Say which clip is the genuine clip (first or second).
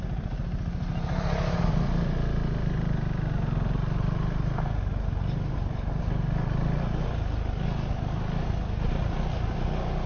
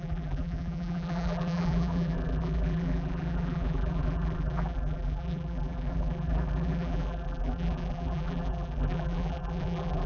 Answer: first